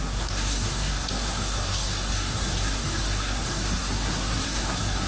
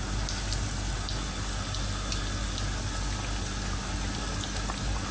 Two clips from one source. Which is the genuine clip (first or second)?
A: second